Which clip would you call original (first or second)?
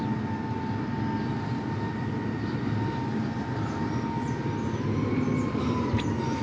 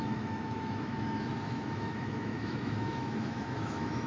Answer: first